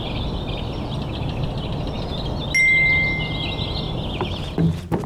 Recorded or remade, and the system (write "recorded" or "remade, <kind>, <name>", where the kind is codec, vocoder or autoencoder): recorded